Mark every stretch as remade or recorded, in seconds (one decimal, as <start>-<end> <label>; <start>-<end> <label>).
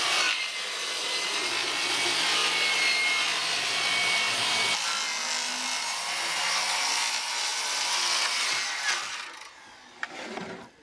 0.0-10.8 recorded